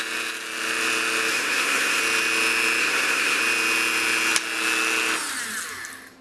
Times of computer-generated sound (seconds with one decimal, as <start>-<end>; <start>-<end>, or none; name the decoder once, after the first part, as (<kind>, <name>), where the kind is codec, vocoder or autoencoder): 1.3-2.0 (codec, SNAC); 2.8-3.4

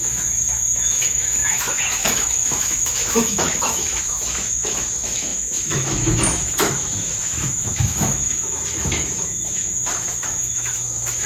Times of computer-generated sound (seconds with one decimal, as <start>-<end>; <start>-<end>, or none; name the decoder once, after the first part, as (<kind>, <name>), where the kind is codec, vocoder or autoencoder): 0.0-11.3 (autoencoder, DAC-VAE)

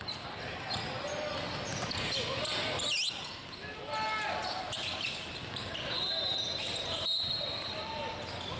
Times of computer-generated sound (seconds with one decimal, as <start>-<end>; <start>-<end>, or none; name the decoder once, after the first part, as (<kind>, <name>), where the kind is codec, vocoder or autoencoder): none

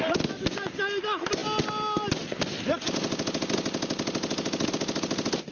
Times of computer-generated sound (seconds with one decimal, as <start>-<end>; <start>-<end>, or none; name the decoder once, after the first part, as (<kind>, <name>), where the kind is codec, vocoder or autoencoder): none